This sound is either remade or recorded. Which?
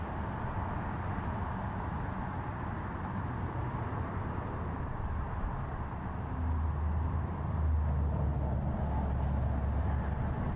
recorded